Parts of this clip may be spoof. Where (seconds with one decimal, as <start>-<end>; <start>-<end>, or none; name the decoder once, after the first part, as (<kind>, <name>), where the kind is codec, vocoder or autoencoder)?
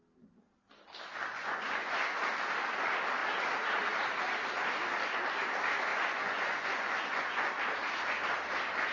1.3-2.2 (vocoder, Vocos); 5.9-7.5